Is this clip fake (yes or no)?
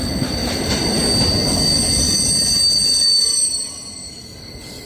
no